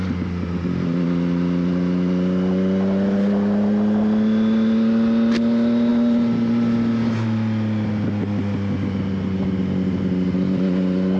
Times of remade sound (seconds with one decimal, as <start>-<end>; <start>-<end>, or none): none

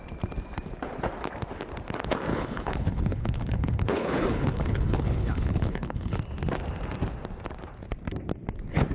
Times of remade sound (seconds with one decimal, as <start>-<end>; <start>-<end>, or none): 2.3-6.2